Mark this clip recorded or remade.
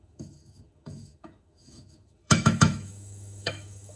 remade